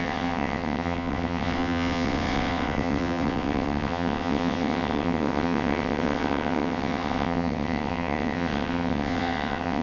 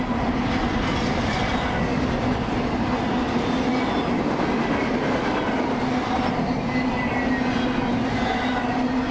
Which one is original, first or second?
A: second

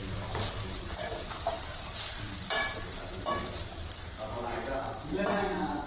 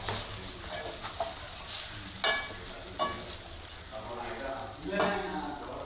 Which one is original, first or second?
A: second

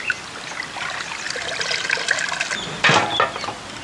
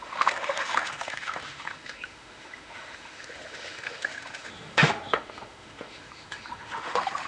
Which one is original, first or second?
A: first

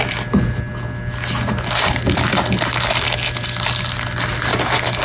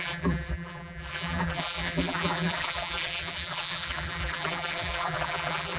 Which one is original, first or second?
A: first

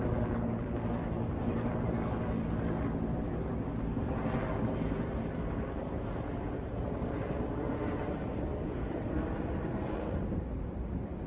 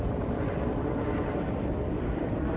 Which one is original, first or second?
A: first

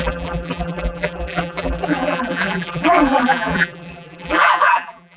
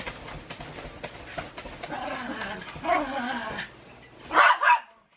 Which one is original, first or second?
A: second